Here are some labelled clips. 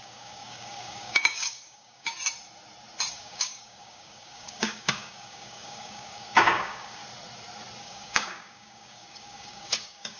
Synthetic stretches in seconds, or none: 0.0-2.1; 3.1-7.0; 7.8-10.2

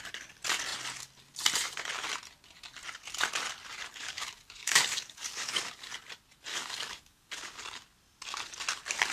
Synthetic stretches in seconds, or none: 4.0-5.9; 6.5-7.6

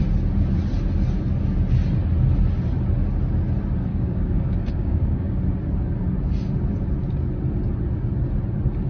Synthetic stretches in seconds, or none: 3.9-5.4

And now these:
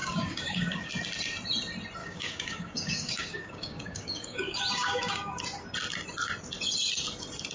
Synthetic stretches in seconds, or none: 0.0-0.9; 2.0-5.4